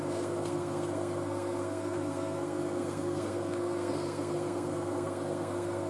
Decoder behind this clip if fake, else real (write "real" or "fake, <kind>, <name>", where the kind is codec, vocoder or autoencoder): fake, codec, SNAC